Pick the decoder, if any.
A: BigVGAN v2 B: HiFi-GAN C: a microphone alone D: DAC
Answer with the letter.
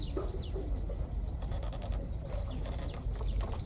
A